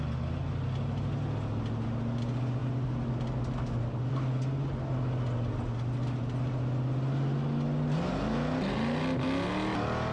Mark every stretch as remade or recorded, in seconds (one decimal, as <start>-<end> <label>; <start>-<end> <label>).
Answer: 0.0-10.1 recorded